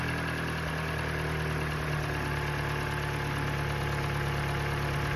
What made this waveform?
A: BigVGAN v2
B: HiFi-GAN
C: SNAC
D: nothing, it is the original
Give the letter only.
D